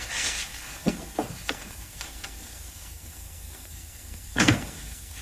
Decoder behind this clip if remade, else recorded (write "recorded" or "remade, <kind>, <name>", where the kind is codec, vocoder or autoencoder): remade, codec, SNAC